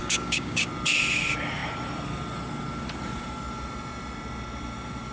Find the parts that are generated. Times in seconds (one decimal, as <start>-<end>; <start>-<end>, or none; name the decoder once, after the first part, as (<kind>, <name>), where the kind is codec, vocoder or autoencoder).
0.0-0.7 (codec, DAC)